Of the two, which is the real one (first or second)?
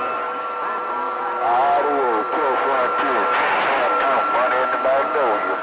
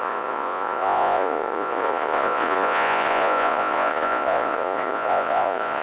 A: first